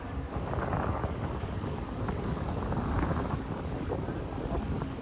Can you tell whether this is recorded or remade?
remade